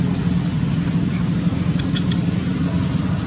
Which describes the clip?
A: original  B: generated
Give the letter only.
A